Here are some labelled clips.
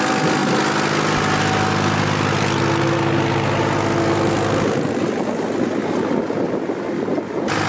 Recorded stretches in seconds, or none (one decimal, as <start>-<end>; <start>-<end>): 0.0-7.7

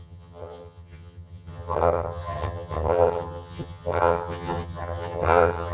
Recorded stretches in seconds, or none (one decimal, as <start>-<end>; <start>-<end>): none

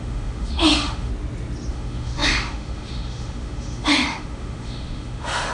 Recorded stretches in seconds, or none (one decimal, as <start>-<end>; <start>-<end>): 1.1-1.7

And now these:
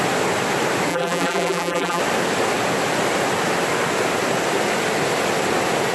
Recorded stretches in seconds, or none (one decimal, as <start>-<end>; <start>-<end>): 0.0-0.9; 2.0-5.9